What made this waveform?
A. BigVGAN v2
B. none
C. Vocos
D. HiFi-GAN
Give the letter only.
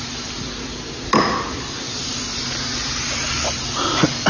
B